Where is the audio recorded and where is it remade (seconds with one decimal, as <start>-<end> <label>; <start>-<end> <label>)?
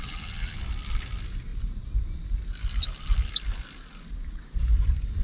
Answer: 0.0-5.2 recorded